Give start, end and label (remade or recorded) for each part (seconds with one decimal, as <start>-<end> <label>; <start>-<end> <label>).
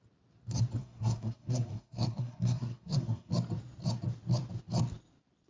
0.0-0.8 recorded; 0.8-3.3 remade; 3.3-5.5 recorded